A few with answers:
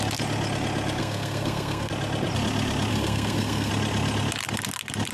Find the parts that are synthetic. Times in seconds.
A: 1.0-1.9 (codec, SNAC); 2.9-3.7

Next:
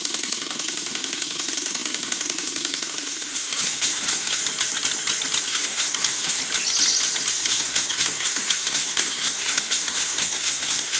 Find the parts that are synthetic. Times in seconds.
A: 0.0-4.4 (codec, SNAC); 5.4-6.4; 7.3-11.0

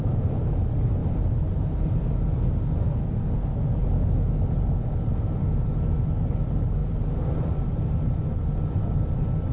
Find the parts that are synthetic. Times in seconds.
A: none